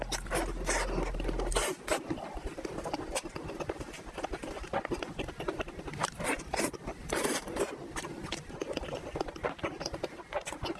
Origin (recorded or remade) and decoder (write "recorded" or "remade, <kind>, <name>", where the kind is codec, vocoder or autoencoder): recorded